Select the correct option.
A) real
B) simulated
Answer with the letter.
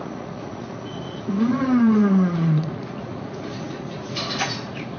B